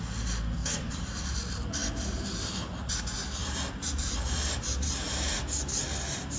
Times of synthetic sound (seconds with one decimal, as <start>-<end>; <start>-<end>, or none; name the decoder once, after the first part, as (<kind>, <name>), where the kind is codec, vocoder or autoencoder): 0.6-1.2 (vocoder, BigVGAN v2); 3.4-5.4